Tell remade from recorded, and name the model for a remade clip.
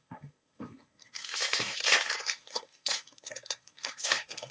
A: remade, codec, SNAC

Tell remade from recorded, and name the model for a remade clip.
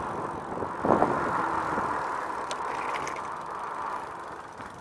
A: recorded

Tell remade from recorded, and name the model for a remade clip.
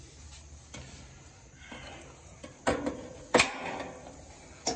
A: recorded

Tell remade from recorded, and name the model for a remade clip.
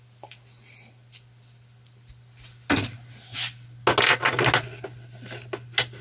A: recorded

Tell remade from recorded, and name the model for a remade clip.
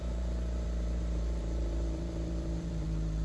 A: remade, vocoder, BigVGAN v2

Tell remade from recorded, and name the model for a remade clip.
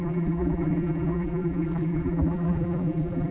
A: remade, vocoder, BigVGAN v2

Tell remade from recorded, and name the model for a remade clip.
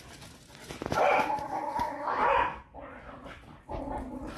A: recorded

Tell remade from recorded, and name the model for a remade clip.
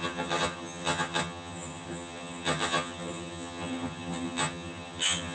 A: remade, vocoder, HiFi-GAN